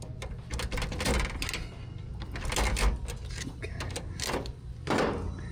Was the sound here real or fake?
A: real